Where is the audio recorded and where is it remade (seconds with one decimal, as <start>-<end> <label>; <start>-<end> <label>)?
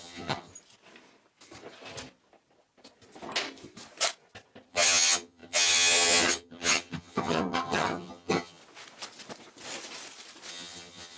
0.0-0.5 remade; 0.5-4.7 recorded; 4.7-8.6 remade; 8.6-10.5 recorded; 10.5-11.2 remade